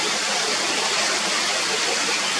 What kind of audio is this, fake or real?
real